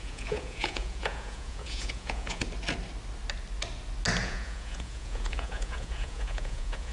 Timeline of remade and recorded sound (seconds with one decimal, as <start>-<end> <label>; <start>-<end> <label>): 0.0-2.4 remade; 2.4-4.2 recorded; 4.2-6.9 remade